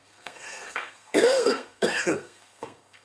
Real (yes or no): no